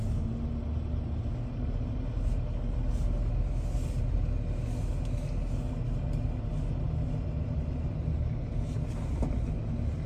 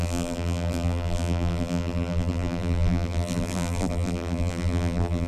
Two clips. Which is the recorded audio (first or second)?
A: first